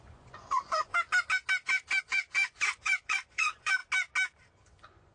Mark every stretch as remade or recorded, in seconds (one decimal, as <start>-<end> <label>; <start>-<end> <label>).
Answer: 0.0-0.9 remade; 0.9-2.0 recorded; 2.0-3.8 remade; 3.8-4.5 recorded; 4.5-5.1 remade

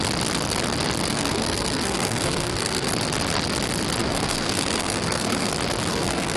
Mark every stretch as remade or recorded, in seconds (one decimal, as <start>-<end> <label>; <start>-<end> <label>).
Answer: 0.0-1.1 recorded; 1.1-2.9 remade; 2.9-4.0 recorded; 4.0-5.5 remade; 5.5-5.9 recorded; 5.9-6.4 remade

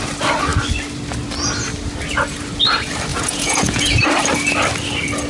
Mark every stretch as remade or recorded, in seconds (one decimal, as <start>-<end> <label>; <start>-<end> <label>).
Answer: 0.0-3.1 recorded; 3.1-4.0 remade; 4.0-5.3 recorded

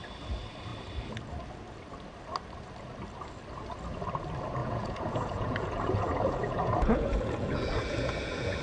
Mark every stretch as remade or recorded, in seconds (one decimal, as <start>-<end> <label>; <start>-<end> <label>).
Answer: 0.0-4.6 recorded; 4.6-8.6 remade

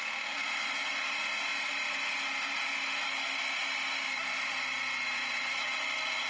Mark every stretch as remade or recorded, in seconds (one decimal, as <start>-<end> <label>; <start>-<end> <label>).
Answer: 0.0-6.3 recorded

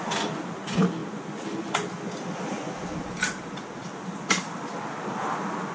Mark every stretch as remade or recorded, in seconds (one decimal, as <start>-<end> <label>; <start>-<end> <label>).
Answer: 0.0-5.7 recorded